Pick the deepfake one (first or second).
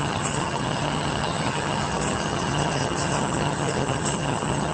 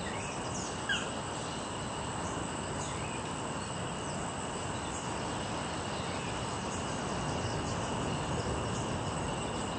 first